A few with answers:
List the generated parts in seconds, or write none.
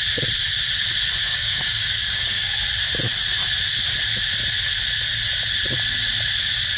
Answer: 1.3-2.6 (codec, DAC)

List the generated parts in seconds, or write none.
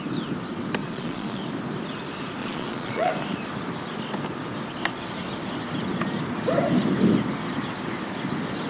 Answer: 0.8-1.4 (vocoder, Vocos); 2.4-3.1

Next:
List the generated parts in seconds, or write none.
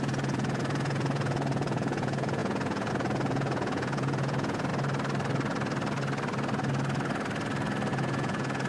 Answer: 0.0-4.7 (vocoder, Vocos); 7.9-8.7